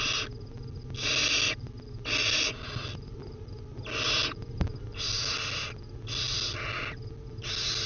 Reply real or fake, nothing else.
real